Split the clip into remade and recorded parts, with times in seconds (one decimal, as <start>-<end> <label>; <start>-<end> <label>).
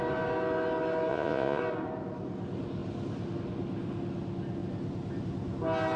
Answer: 0.0-1.1 recorded; 1.1-1.6 remade; 1.6-6.0 recorded